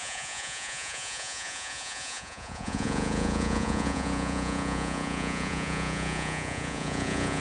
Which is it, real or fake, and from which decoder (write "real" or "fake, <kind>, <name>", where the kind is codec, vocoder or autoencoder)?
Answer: fake, vocoder, Vocos